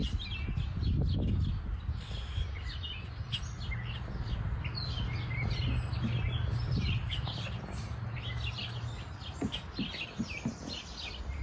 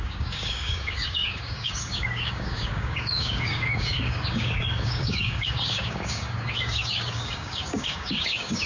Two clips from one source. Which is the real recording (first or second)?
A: first